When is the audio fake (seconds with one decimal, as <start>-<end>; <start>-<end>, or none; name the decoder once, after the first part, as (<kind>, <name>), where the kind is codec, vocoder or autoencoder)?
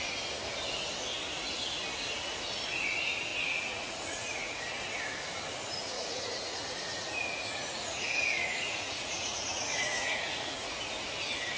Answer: 3.3-4.6 (vocoder, Vocos); 5.8-10.8